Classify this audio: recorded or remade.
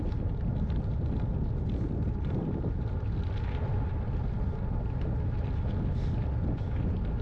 recorded